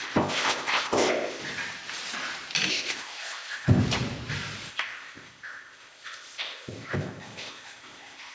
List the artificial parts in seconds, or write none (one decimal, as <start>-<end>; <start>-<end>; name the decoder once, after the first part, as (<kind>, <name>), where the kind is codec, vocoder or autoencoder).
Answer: 0.0-1.4 (codec, ZipCodec); 2.7-3.8; 4.7-8.3